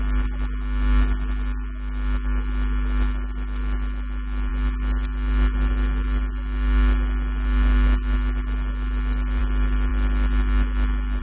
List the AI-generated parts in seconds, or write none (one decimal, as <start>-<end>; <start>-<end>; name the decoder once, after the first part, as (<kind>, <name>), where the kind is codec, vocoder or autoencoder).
none